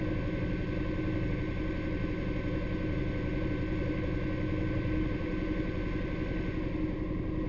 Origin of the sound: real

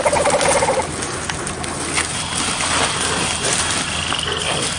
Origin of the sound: real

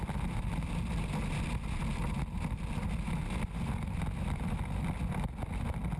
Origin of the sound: real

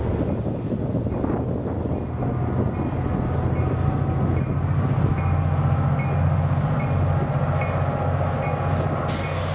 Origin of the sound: real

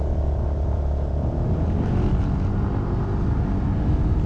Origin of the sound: real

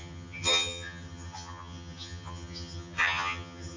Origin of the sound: fake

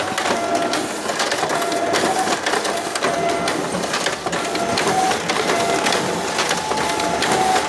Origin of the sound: real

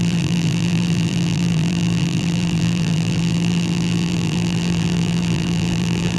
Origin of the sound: fake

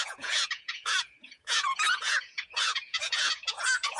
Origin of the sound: fake